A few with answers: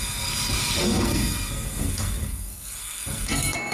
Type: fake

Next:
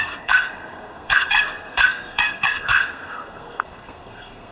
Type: fake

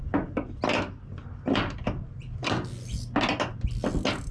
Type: real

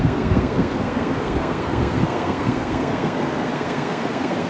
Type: fake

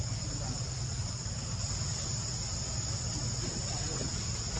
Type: real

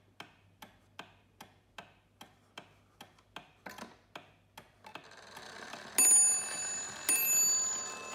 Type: real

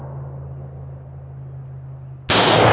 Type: real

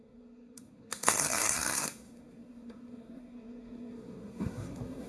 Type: fake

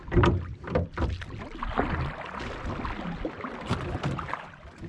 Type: real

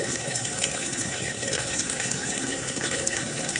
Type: fake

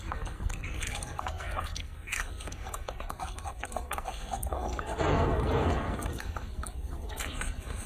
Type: fake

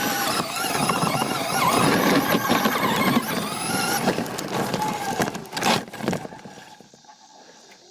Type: real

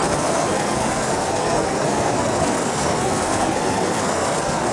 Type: fake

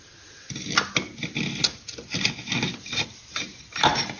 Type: real